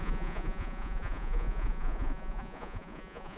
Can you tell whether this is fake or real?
fake